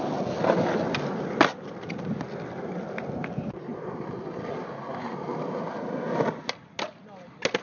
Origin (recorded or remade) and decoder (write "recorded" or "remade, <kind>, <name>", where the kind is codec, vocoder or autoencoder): recorded